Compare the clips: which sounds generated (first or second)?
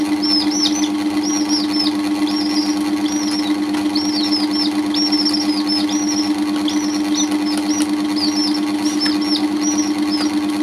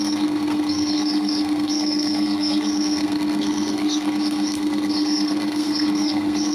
second